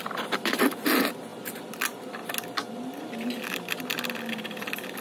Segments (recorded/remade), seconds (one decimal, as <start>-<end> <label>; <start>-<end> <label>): 0.0-5.0 recorded